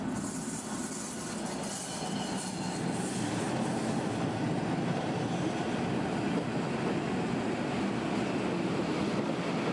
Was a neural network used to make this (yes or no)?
no